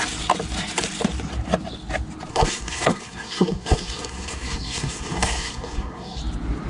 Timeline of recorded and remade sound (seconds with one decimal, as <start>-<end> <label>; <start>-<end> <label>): 0.0-2.3 recorded; 2.3-6.2 remade; 6.2-6.7 recorded